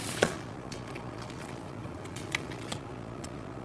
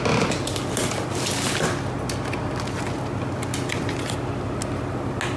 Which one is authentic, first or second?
second